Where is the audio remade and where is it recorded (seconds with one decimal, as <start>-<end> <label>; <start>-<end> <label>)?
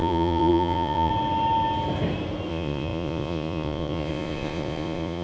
0.0-1.1 remade; 1.1-2.5 recorded; 2.5-5.2 remade